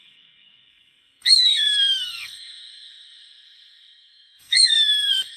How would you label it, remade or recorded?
remade